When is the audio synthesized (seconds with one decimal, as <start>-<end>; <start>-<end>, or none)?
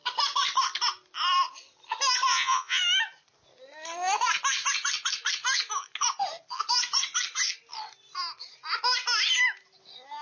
2.3-2.8